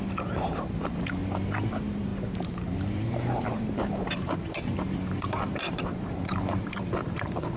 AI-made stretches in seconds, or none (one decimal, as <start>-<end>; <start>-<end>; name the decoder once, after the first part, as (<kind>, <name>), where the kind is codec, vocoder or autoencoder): 0.0-1.2 (vocoder, BigVGAN v2); 1.7-7.6

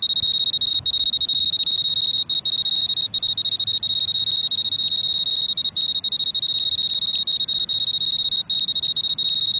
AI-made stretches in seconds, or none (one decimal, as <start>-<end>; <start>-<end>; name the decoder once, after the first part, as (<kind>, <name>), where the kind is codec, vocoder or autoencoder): 0.7-1.9 (autoencoder, DAC-VAE)

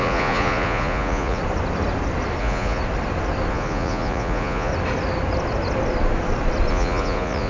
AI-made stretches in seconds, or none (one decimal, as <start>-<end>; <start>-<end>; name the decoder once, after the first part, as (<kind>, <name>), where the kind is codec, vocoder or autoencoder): 0.0-1.4 (vocoder, Vocos); 2.4-2.8; 3.5-4.7; 6.7-7.5

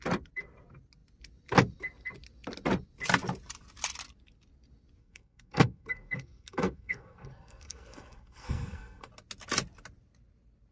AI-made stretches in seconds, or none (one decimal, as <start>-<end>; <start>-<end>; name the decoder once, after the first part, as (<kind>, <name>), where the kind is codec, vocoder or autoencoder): 5.0-9.1 (codec, SNAC)

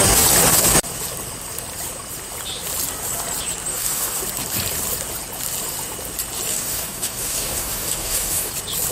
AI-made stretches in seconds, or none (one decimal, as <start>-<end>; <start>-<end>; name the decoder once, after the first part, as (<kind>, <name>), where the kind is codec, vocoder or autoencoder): 3.7-4.2 (codec, DAC); 6.5-8.5

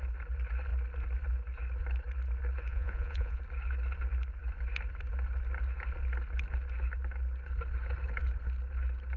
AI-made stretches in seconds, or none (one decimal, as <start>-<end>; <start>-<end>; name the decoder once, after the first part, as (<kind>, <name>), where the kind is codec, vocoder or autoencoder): 2.7-3.4 (vocoder, Vocos)

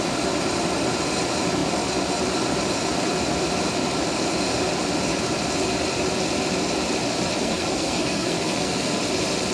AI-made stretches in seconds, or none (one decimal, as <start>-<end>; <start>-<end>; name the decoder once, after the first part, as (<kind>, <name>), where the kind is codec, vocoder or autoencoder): 7.4-9.0 (codec, SNAC)